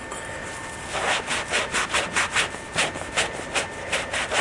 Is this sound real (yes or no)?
yes